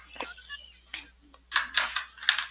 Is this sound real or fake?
real